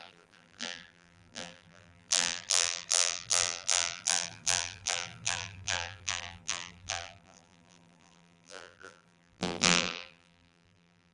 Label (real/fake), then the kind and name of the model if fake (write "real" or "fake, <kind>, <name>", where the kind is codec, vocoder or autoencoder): fake, vocoder, BigVGAN v2